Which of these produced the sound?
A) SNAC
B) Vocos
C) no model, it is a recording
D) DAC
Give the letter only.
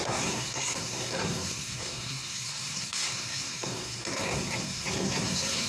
A